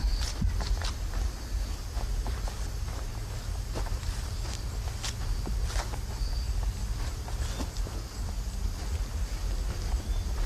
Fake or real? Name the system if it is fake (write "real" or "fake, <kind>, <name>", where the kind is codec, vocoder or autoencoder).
real